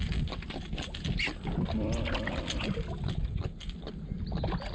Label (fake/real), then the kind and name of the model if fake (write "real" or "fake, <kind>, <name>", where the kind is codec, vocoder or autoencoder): real